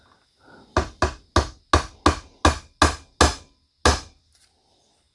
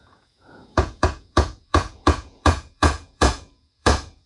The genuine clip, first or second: first